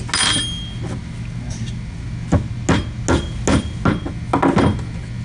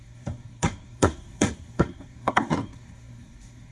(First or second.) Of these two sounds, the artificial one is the second